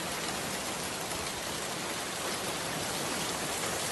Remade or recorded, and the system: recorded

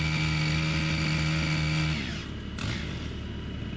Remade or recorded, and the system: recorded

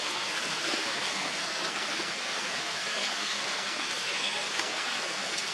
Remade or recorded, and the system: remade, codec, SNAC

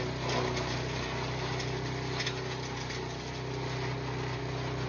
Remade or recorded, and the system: recorded